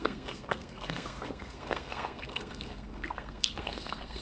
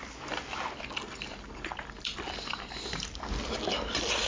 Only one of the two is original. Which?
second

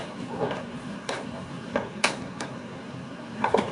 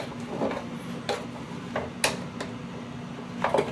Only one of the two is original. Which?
second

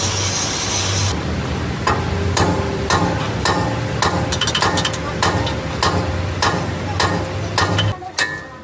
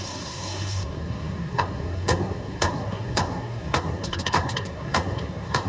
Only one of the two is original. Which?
first